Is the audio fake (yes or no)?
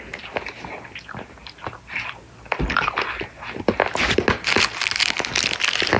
no